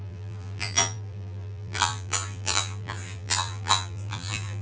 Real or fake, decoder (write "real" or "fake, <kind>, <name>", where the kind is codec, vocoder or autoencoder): fake, vocoder, BigVGAN v2